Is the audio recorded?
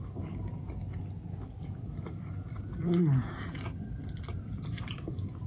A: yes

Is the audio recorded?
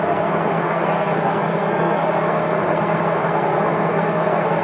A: no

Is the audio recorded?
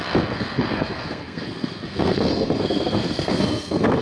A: no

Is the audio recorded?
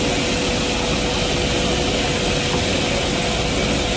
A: yes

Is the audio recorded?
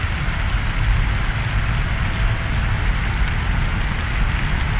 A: yes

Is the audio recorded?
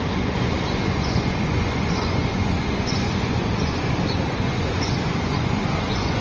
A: no